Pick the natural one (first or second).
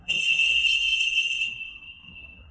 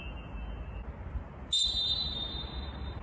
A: second